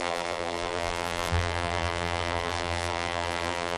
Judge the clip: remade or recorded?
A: remade